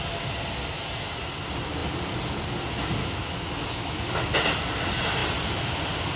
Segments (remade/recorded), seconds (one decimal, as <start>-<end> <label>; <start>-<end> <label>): 0.0-3.0 recorded; 3.0-4.1 remade; 4.1-6.2 recorded